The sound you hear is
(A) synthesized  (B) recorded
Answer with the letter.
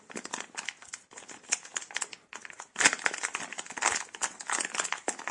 B